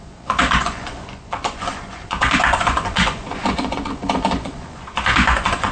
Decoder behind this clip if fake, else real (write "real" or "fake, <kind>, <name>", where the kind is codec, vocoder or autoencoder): fake, vocoder, Vocos